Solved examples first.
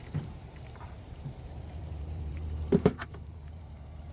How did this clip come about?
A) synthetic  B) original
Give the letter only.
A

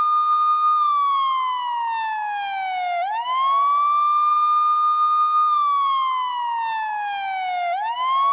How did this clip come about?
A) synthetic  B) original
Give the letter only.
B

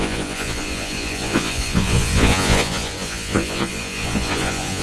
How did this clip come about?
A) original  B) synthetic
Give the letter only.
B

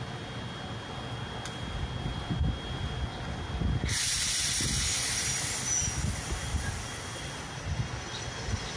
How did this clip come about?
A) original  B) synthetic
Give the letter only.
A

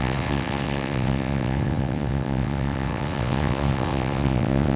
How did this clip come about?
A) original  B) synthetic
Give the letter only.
B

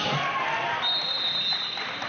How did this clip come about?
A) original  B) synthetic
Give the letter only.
A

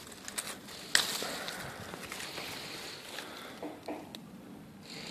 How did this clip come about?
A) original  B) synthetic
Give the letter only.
A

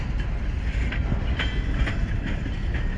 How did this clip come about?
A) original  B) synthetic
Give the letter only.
A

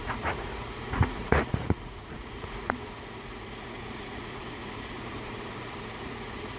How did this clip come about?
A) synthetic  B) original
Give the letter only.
A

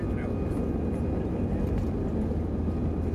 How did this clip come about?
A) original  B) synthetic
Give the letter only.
A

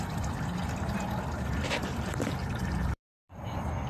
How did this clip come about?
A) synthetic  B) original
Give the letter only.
A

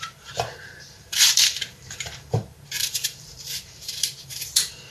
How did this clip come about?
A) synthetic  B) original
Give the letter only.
A